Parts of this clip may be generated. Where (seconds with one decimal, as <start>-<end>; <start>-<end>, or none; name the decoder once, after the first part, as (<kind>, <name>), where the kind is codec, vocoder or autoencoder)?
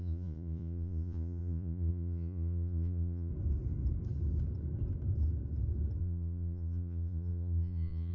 0.0-3.3 (vocoder, Vocos); 6.0-8.1